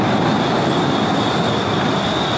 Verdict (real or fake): real